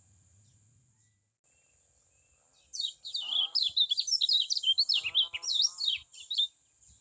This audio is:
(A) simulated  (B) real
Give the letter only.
B